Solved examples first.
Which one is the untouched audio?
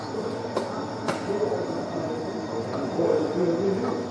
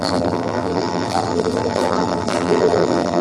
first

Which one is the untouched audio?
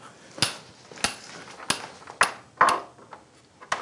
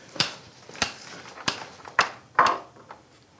first